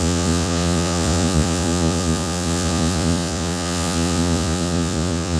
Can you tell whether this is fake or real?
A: fake